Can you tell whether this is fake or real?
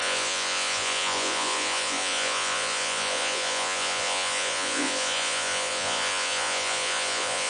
fake